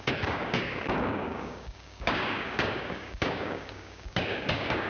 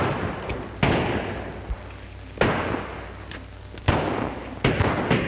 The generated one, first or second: first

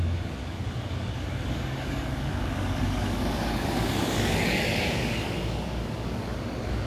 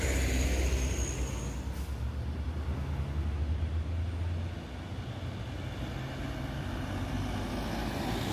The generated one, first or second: first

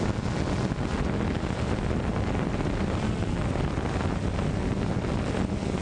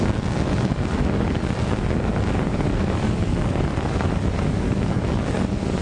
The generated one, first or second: second